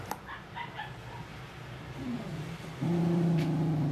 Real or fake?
fake